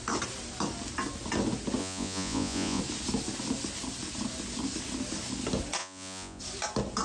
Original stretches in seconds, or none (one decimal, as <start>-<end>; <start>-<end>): 0.0-1.8; 2.8-5.8; 6.4-7.0